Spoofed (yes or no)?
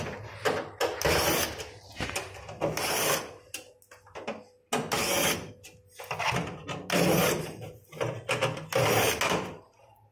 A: no